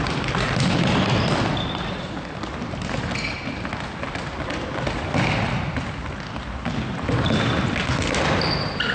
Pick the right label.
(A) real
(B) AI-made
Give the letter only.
A